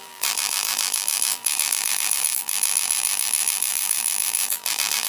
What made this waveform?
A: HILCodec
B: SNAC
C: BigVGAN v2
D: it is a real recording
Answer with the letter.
C